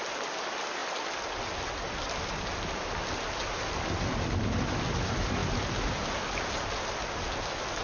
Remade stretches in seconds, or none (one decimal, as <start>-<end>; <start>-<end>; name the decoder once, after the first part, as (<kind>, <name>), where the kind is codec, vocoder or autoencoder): none